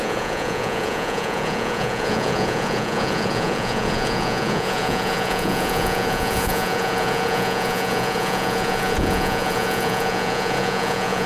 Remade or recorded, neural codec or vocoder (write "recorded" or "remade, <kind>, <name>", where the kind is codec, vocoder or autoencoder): remade, vocoder, Vocos